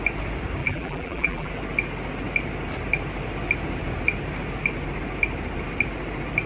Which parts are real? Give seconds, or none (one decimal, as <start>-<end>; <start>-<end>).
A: 0.0-0.6; 1.5-6.5